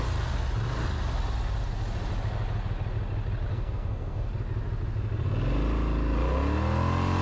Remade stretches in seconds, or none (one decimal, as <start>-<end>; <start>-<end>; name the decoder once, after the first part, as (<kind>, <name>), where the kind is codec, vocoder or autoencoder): 3.5-4.3 (codec, SNAC)